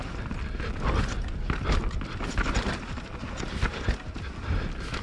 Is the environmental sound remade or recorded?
recorded